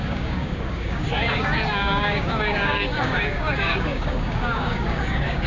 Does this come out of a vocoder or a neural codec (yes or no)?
yes